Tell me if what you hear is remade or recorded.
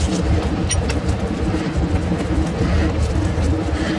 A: recorded